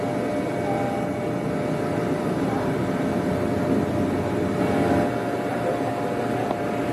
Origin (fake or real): real